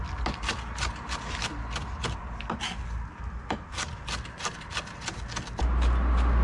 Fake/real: real